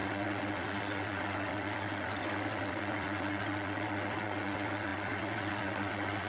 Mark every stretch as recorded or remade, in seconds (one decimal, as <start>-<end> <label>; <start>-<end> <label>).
0.0-6.3 remade